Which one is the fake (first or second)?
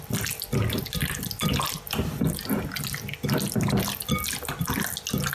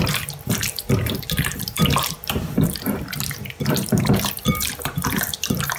second